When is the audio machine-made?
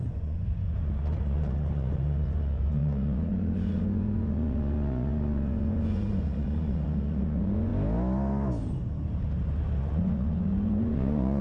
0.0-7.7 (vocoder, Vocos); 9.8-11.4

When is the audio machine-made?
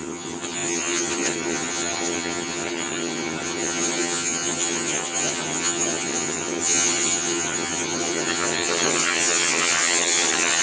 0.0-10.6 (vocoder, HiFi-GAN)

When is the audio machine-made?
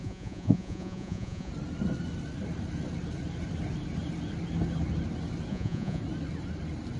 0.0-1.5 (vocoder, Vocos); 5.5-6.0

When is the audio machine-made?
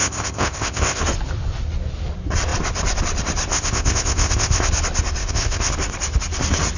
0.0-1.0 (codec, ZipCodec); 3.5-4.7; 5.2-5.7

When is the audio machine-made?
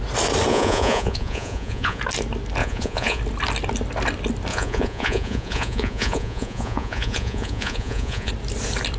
0.5-2.0 (vocoder, Vocos); 2.6-3.2; 4.5-8.3